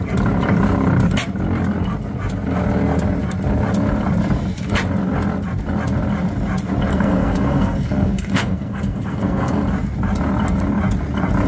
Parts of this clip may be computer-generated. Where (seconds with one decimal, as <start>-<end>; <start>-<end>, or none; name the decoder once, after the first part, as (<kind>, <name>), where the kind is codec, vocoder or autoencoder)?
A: 6.9-9.6 (codec, SNAC)